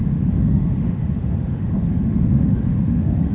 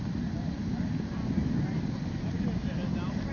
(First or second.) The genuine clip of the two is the second